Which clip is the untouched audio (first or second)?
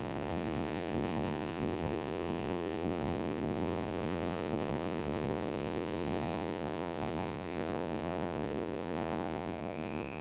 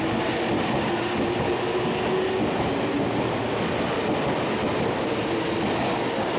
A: second